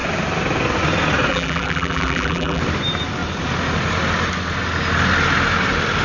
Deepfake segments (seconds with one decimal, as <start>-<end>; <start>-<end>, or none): 1.3-2.6